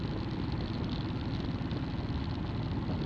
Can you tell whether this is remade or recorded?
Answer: recorded